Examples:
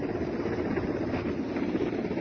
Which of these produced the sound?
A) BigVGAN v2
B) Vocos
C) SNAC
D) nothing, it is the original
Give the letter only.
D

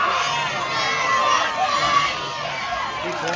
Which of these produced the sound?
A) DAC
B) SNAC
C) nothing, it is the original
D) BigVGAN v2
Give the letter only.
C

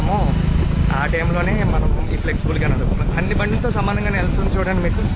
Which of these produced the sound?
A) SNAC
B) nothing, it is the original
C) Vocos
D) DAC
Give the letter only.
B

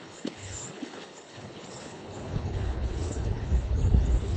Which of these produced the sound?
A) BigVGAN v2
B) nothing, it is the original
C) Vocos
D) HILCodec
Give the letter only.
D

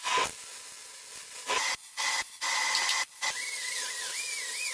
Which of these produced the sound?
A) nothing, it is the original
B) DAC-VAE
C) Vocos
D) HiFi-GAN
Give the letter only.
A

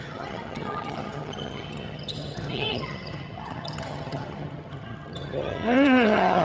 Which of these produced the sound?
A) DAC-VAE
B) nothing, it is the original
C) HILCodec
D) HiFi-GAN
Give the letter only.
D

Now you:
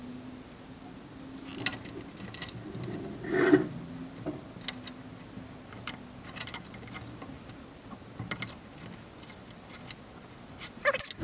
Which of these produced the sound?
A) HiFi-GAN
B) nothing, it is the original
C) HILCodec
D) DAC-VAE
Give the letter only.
B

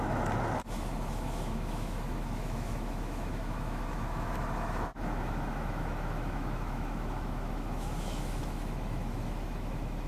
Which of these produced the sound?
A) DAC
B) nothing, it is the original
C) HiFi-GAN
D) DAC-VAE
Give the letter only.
D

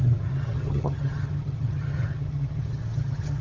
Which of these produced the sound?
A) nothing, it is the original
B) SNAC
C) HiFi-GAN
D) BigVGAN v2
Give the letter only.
C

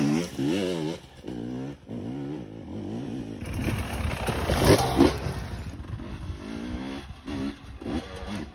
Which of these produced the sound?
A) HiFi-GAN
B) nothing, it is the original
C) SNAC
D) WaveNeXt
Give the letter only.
B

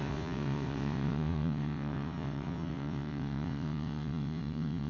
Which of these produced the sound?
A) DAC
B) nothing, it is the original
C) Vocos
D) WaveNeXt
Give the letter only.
D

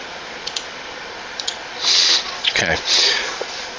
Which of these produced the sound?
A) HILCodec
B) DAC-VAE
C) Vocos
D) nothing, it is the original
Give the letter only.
C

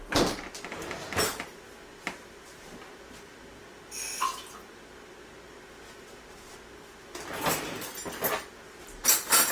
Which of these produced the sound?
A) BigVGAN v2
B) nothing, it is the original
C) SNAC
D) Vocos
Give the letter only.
B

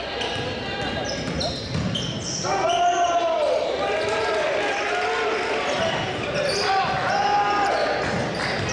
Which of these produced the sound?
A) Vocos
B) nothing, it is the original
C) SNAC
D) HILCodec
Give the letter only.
B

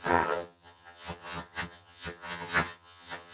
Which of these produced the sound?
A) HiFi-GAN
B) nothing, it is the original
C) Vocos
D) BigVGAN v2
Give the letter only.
A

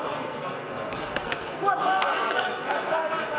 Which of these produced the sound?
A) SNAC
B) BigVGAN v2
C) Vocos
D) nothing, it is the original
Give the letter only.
A